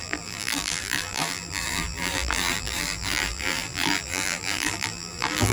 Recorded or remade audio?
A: remade